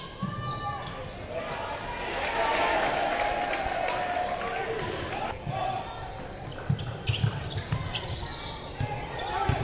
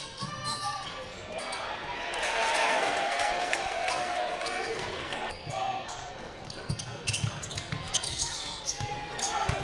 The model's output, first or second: second